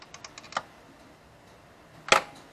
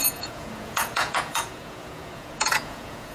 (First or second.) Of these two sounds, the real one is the first